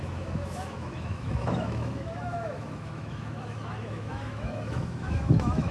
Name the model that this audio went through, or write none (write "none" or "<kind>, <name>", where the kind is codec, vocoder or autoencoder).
autoencoder, DAC-VAE